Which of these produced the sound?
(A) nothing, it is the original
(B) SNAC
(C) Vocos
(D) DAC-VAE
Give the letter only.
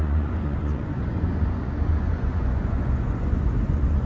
C